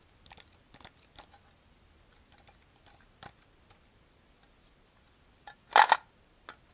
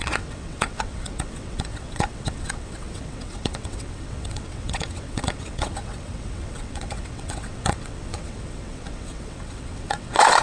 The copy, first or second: second